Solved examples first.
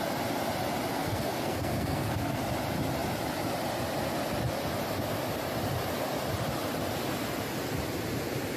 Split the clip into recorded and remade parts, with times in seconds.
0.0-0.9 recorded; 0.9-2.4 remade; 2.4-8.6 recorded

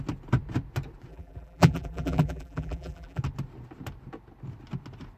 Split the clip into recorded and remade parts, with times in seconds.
0.0-1.1 recorded; 1.1-3.2 remade; 3.2-5.2 recorded

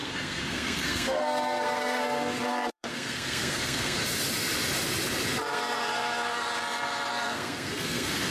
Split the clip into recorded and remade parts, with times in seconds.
0.0-4.0 remade; 4.0-5.5 recorded; 5.5-6.6 remade; 6.6-7.1 recorded; 7.1-8.3 remade

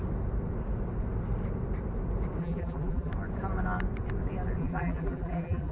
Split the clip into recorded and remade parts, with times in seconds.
0.0-2.4 recorded; 2.4-3.1 remade; 3.1-4.6 recorded; 4.6-5.7 remade

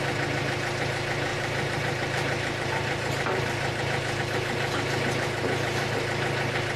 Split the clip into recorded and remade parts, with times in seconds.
0.0-1.3 recorded; 1.3-4.2 remade; 4.2-6.8 recorded